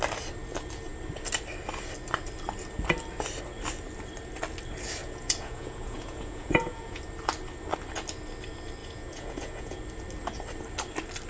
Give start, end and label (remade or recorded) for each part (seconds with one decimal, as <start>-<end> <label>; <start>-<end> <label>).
0.0-5.0 recorded; 5.0-7.0 remade; 7.0-8.8 recorded; 8.8-9.8 remade; 9.8-11.3 recorded